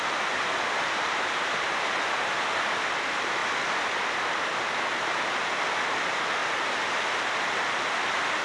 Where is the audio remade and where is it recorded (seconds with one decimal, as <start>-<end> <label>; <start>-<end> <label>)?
0.0-8.4 recorded